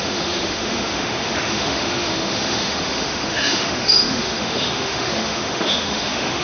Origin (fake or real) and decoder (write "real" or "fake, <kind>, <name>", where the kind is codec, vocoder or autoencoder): fake, autoencoder, DAC-VAE